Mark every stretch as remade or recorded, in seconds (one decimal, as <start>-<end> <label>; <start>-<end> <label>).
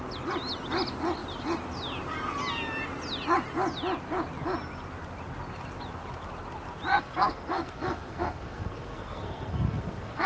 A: 0.0-6.9 recorded; 6.9-10.3 remade